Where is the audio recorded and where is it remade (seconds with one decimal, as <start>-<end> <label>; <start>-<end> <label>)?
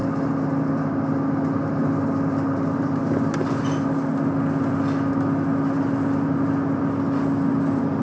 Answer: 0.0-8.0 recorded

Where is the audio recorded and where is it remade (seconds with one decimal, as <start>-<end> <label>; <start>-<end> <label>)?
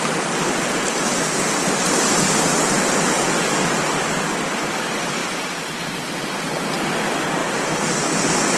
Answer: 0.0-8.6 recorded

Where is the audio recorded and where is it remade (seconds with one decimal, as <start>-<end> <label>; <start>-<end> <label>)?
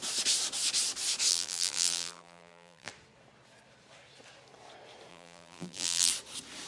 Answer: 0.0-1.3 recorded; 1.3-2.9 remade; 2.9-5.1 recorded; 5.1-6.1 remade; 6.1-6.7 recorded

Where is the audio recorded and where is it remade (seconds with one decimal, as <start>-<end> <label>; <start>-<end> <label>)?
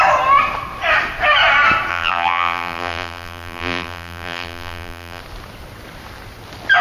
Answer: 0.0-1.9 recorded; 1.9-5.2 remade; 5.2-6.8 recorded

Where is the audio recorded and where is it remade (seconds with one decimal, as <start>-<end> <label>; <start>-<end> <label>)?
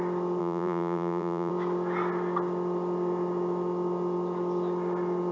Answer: 0.0-0.4 recorded; 0.4-1.5 remade; 1.5-5.3 recorded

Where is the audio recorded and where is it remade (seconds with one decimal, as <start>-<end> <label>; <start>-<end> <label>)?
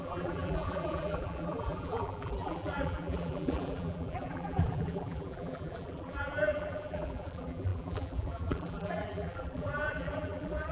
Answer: 0.0-10.7 remade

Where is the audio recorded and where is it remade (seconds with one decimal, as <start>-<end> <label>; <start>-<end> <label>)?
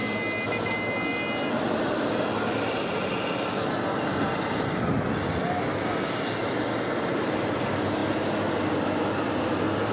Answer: 0.0-9.9 recorded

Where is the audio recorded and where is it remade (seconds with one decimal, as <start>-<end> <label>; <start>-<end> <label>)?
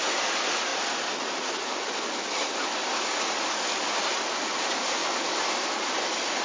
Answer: 0.0-0.7 recorded; 0.7-1.4 remade; 1.4-2.8 recorded; 2.8-4.1 remade; 4.1-5.0 recorded; 5.0-5.9 remade; 5.9-6.4 recorded